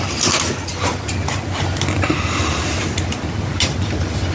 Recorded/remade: recorded